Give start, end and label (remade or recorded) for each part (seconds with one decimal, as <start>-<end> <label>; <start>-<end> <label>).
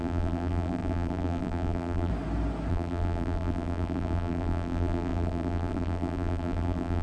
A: 0.0-2.1 remade; 2.1-2.7 recorded; 2.7-7.0 remade